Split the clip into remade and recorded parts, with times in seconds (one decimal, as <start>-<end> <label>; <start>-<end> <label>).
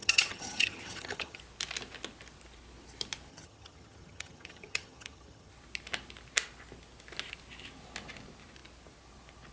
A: 0.0-1.4 remade; 1.4-3.3 recorded; 3.3-5.5 remade; 5.5-9.5 recorded